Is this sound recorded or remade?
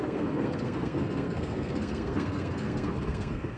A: remade